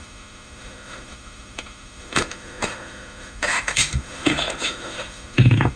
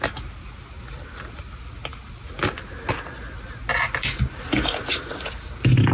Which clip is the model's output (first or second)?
first